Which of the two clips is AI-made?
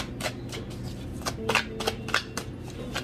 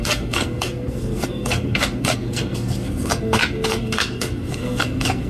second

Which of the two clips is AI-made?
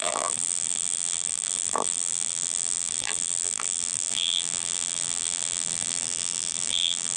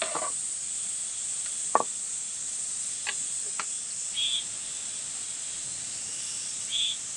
first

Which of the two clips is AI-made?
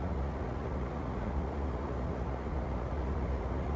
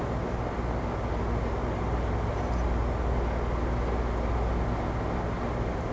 first